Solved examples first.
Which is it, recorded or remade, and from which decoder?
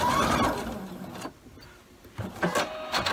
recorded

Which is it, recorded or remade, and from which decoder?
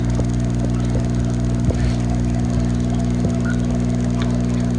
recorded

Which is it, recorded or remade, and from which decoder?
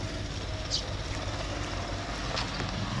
recorded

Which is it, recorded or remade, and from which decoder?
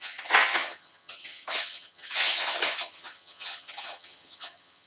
remade, vocoder, HiFi-GAN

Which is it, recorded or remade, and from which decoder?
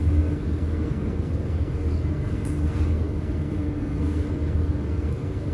remade, codec, SNAC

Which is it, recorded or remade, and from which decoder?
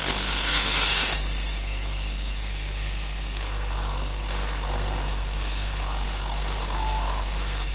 remade, codec, SNAC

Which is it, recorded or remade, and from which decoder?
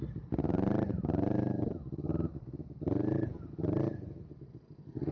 recorded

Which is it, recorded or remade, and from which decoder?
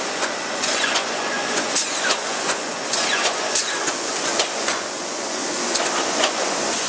remade, vocoder, Vocos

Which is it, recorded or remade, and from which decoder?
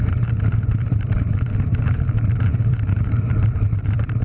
remade, vocoder, BigVGAN v2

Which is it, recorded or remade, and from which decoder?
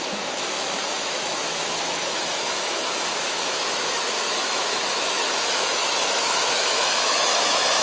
remade, autoencoder, DAC-VAE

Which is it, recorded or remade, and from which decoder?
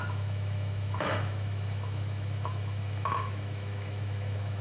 remade, autoencoder, DAC-VAE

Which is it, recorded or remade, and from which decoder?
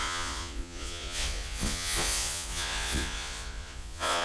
remade, vocoder, Vocos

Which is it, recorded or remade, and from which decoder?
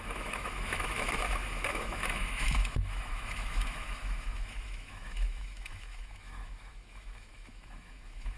remade, autoencoder, DAC-VAE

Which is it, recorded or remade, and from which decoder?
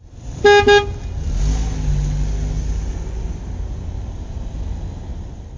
recorded